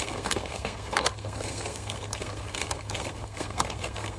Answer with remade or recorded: remade